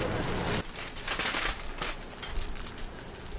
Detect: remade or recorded recorded